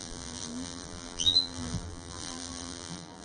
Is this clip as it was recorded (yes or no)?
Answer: no